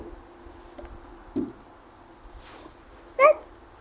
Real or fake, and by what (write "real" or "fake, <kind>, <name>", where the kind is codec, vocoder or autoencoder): real